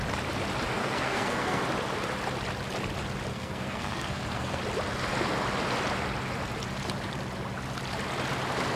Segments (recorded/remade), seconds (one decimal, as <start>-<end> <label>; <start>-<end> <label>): 0.0-0.8 recorded; 0.8-1.6 remade; 1.6-3.3 recorded; 3.3-4.6 remade; 4.6-8.8 recorded